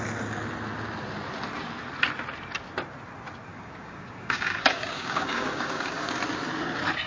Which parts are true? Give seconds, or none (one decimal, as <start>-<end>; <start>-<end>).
0.0-3.5; 6.2-7.1